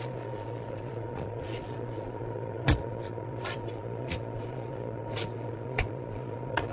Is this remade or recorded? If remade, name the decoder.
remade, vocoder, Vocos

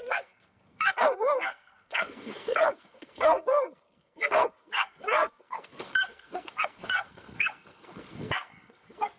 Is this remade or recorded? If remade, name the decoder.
remade, codec, SNAC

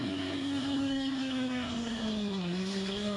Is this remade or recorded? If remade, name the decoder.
remade, codec, SNAC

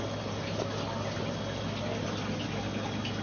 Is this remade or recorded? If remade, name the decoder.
recorded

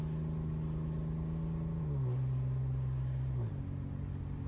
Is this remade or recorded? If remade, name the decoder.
recorded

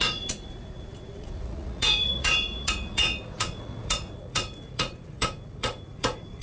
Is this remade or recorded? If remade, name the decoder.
remade, vocoder, Vocos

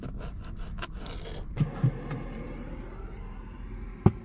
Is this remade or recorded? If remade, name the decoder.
recorded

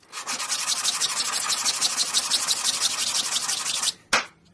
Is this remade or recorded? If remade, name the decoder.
recorded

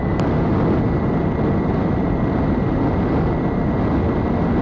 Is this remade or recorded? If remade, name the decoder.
recorded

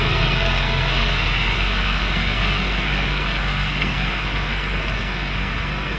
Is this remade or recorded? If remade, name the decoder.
remade, codec, SNAC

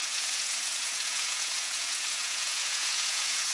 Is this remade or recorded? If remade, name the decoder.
remade, vocoder, Vocos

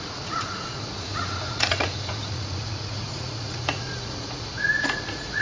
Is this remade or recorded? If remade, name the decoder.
remade, vocoder, Vocos